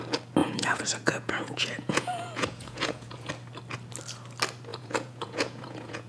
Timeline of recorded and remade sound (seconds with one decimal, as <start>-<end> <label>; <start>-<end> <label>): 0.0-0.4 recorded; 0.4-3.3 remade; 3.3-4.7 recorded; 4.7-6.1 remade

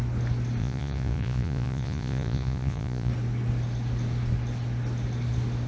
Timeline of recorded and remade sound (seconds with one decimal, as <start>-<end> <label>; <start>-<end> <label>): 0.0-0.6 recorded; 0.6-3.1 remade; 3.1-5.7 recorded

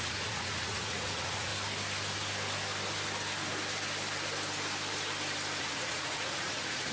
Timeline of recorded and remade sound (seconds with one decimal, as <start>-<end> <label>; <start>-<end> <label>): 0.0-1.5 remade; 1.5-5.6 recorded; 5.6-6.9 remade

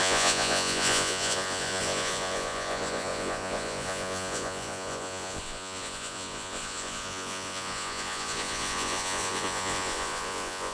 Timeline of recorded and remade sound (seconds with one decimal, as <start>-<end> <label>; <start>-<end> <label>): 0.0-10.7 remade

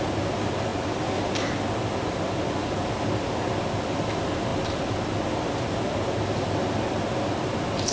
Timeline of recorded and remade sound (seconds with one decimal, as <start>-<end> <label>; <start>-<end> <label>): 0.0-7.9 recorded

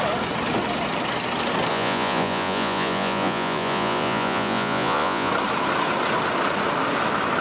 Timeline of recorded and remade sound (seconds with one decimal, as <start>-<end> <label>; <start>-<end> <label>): 0.0-1.7 recorded; 1.7-5.3 remade; 5.3-7.4 recorded

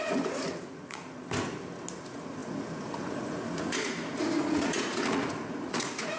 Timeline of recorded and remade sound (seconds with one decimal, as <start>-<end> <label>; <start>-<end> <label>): 0.0-1.0 remade; 1.0-1.9 recorded; 1.9-6.2 remade